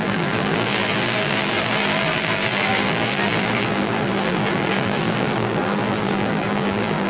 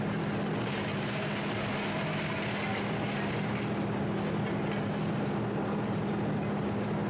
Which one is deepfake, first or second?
first